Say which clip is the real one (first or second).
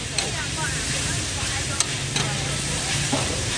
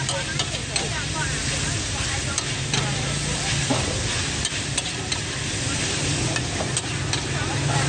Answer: second